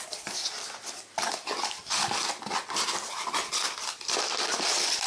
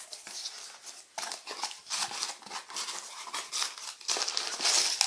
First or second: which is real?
second